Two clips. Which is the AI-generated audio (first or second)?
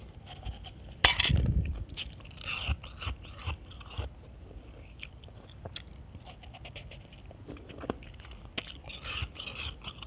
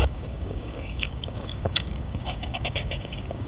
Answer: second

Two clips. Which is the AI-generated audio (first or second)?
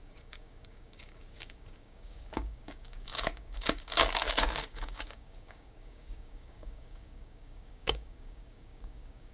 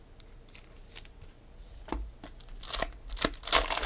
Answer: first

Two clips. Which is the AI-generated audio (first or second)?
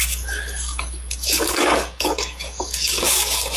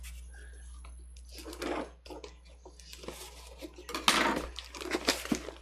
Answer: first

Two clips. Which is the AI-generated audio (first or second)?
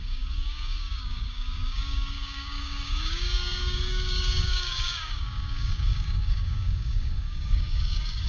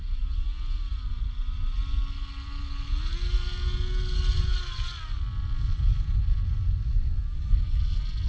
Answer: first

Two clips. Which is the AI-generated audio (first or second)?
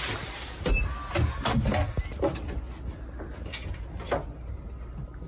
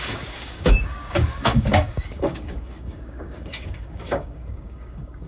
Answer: second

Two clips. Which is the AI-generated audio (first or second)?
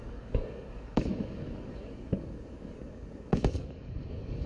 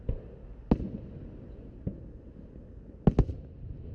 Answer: first